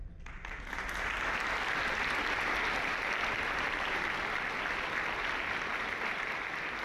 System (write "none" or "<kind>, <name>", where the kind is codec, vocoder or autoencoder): none